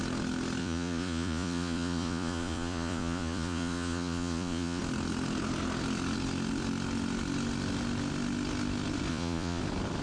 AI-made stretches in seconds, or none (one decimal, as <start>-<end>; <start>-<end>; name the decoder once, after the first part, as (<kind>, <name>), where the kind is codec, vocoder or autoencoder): 0.6-4.8 (vocoder, Vocos); 9.1-9.6

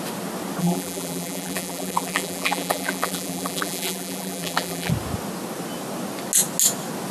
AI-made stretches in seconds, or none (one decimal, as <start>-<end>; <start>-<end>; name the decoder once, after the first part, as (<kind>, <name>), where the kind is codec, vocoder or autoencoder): 0.6-4.9 (vocoder, BigVGAN v2)

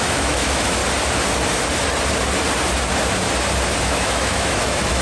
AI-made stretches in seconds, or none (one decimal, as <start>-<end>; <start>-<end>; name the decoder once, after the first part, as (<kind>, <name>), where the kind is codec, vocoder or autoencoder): 0.0-0.8 (autoencoder, DAC-VAE); 3.8-5.0

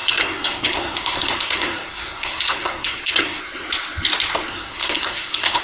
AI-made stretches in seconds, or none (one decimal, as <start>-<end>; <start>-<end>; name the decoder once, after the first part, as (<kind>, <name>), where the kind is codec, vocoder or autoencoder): 0.0-3.4 (codec, SNAC); 4.5-5.6

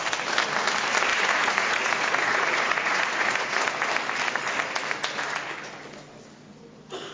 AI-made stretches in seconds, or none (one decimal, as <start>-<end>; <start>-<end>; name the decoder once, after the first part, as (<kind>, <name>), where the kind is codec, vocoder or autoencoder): 1.1-3.7 (vocoder, Vocos)

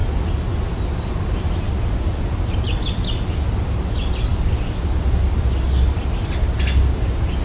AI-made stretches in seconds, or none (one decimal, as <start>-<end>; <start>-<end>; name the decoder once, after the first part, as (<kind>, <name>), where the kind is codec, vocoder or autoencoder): none

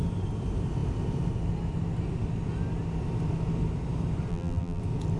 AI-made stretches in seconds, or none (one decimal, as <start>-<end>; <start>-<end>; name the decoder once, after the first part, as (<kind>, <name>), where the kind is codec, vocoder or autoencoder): 4.3-4.8 (vocoder, BigVGAN v2)

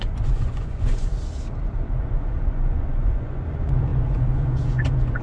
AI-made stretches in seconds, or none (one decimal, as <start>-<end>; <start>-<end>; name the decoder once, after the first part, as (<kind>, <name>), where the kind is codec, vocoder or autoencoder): 0.0-1.1 (vocoder, Vocos); 2.0-5.2